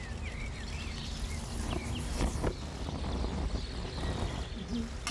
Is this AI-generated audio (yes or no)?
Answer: no